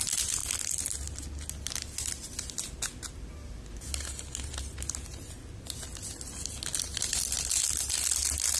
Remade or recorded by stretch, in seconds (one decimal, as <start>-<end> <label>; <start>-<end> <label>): 0.0-8.6 recorded